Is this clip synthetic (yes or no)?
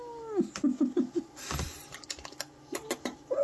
no